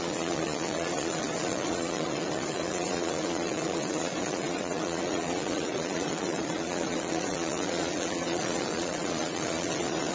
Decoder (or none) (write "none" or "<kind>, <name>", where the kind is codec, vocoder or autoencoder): vocoder, Vocos